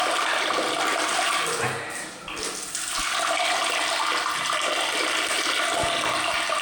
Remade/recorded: recorded